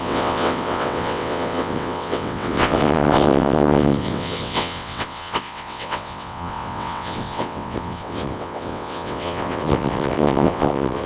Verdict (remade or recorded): remade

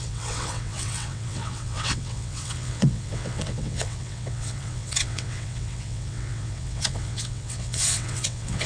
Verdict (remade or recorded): remade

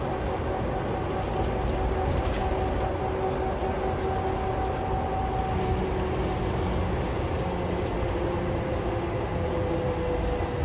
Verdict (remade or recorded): recorded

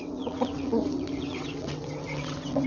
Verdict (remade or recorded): remade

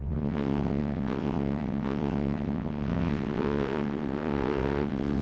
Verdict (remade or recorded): remade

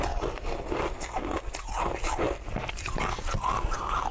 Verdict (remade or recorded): recorded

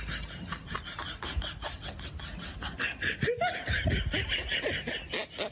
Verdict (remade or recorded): recorded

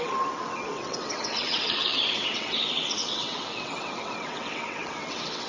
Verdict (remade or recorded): remade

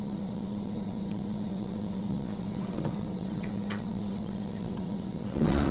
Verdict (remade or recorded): remade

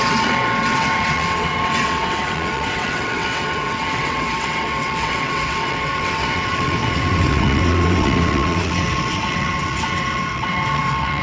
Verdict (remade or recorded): remade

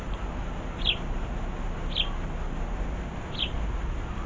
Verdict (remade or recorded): recorded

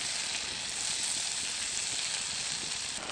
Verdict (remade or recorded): recorded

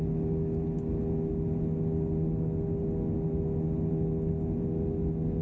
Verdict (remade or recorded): recorded